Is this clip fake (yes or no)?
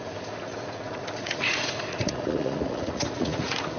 yes